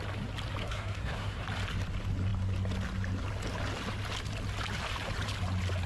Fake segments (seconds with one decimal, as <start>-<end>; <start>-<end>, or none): 0.6-1.4